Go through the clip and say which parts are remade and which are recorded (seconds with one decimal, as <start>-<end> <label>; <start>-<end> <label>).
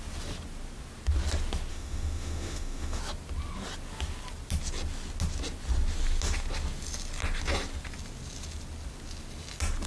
0.0-1.7 recorded; 1.7-3.0 remade; 3.0-9.9 recorded